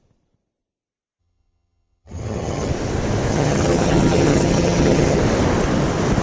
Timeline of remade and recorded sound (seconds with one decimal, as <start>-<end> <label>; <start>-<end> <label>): 0.0-1.2 recorded; 1.2-2.7 remade; 2.7-3.3 recorded; 3.3-5.2 remade; 5.2-6.2 recorded